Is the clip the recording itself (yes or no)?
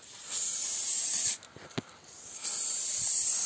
yes